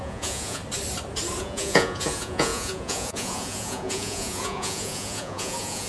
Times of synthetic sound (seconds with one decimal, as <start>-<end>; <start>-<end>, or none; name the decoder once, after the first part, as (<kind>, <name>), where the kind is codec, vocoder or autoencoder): 0.0-0.6 (vocoder, Vocos); 1.4-5.9

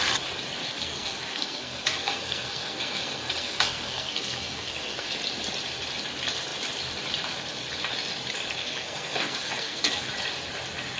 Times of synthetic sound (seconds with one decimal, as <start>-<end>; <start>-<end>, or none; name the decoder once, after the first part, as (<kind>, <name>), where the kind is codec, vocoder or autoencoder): 0.6-5.1 (codec, SNAC); 8.6-10.1

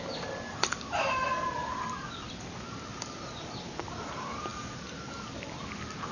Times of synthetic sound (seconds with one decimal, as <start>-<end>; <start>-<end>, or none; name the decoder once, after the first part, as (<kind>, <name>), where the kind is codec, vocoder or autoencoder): 2.9-3.7 (vocoder, BigVGAN v2); 4.5-5.1